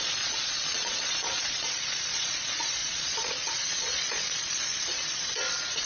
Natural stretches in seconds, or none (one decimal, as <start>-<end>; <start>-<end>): none